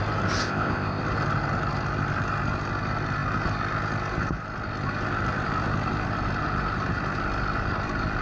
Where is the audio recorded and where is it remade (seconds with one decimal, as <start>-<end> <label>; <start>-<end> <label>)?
0.0-0.4 recorded; 0.4-1.0 remade; 1.0-8.2 recorded